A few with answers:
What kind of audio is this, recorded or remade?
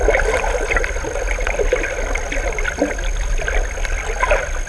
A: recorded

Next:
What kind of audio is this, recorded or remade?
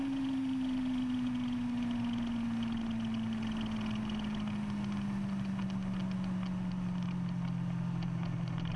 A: recorded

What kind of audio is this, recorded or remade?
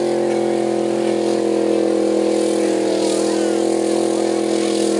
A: recorded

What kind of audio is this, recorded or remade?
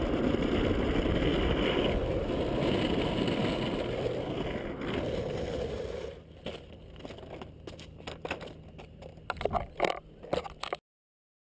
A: recorded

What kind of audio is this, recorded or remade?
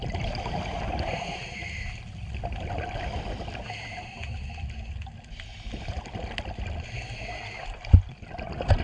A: recorded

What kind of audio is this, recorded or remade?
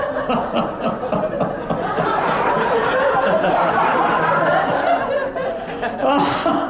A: recorded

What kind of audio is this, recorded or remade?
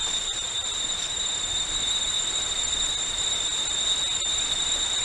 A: recorded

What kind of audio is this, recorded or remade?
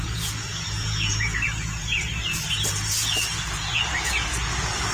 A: remade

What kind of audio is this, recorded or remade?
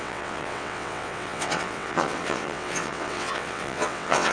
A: remade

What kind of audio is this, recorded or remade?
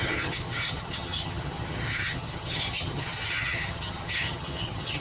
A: remade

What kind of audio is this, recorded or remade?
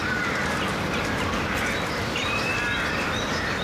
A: remade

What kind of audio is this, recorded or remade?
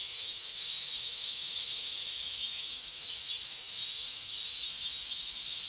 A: remade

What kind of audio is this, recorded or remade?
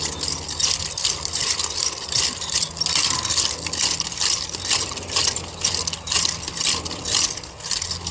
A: recorded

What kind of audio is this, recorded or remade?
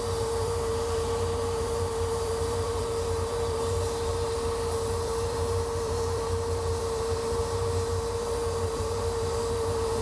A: remade